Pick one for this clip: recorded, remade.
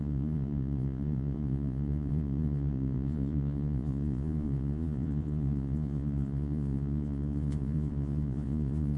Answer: remade